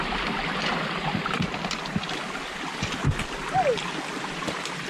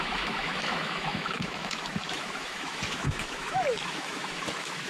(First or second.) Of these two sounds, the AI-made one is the second